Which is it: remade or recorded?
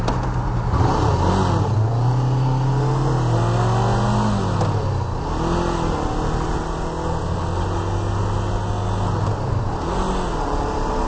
recorded